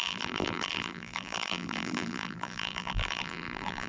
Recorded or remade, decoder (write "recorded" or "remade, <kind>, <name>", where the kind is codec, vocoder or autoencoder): remade, vocoder, BigVGAN v2